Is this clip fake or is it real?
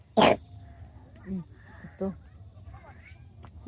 real